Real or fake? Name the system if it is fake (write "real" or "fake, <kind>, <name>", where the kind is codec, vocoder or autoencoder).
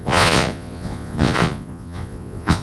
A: fake, vocoder, Vocos